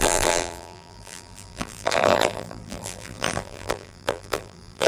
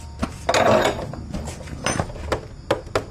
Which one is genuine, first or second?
second